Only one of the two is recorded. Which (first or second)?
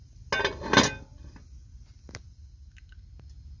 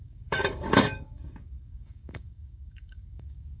first